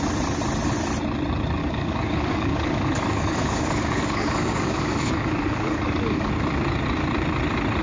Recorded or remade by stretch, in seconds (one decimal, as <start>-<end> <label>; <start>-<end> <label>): 0.0-1.6 recorded; 1.6-6.3 remade; 6.3-7.8 recorded